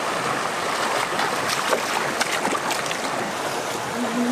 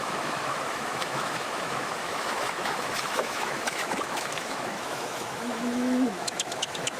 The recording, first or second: first